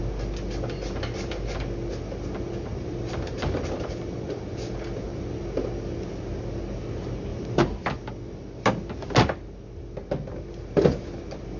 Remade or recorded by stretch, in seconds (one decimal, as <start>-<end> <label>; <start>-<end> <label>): 0.0-2.7 recorded; 2.7-3.4 remade; 3.4-7.3 recorded; 7.3-7.9 remade; 7.9-11.6 recorded